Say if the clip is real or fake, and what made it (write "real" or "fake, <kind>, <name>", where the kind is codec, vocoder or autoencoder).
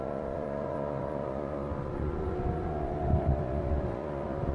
fake, vocoder, Vocos